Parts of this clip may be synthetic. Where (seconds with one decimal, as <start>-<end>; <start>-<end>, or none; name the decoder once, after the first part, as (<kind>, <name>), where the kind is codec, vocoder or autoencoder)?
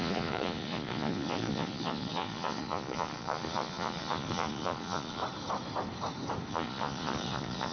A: 0.0-5.2 (vocoder, Vocos); 6.5-7.7